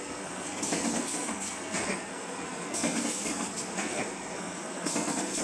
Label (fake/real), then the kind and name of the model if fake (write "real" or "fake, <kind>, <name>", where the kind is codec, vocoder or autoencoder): fake, codec, SNAC